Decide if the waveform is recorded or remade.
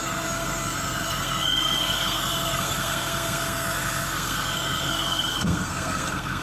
remade